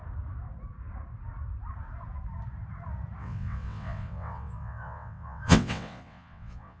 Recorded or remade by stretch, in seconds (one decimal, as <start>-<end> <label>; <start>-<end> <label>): 0.0-3.2 recorded; 3.2-6.8 remade